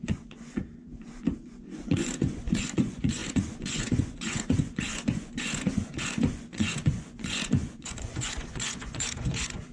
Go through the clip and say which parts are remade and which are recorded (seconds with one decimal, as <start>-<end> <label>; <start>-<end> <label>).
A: 0.0-9.7 remade